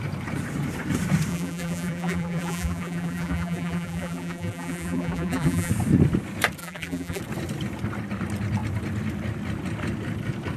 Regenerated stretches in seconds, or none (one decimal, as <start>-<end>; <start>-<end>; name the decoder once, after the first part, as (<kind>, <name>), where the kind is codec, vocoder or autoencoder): 1.3-5.7 (vocoder, BigVGAN v2); 6.6-7.2